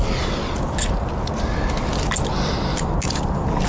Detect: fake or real real